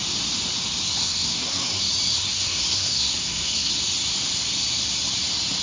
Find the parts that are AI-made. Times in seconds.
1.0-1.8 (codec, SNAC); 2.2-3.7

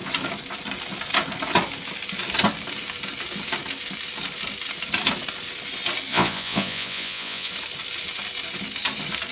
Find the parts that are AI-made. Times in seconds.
6.1-7.5 (vocoder, Vocos)

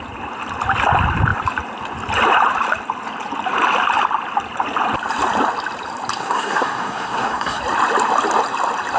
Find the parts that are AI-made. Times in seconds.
6.2-7.6 (codec, SNAC)

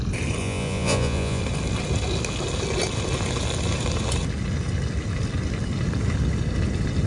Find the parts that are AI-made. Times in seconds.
0.4-1.4 (vocoder, Vocos)

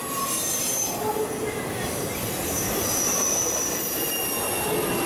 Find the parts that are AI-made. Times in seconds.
none

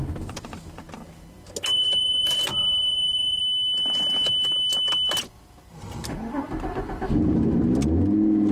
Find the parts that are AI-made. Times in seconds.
1.7-3.4 (vocoder, BigVGAN v2)

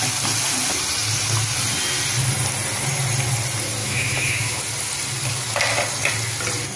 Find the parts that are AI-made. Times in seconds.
3.8-4.6 (autoencoder, DAC-VAE)

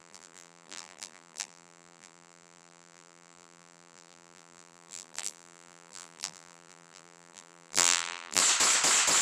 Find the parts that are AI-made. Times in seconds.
0.0-8.4 (vocoder, BigVGAN v2)